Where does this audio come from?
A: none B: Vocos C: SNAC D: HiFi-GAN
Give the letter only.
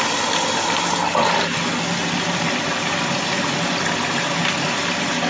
A